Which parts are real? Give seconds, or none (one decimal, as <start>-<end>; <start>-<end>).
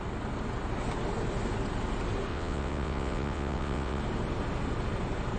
0.0-2.3; 4.0-5.4